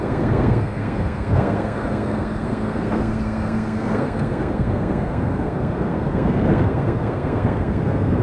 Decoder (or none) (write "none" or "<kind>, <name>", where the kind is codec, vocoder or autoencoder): codec, SNAC